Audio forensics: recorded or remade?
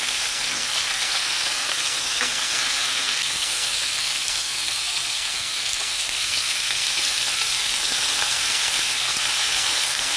remade